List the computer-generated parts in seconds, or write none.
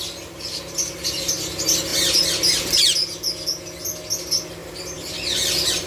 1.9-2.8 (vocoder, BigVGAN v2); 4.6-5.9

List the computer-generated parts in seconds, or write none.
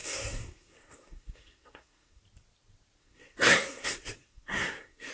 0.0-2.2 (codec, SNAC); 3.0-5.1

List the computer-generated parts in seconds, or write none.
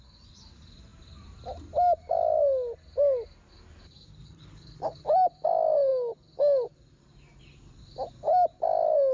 4.1-5.0 (codec, HILCodec)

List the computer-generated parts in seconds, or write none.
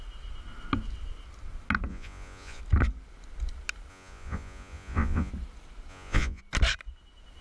1.9-2.6 (vocoder, Vocos); 3.9-5.3; 5.9-6.4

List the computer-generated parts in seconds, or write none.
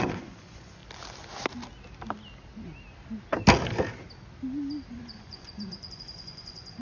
0.0-0.8 (vocoder, Vocos); 4.9-6.8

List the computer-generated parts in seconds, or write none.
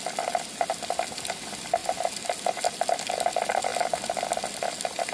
none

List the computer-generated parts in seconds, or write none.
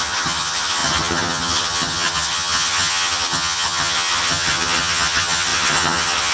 0.0-6.3 (vocoder, HiFi-GAN)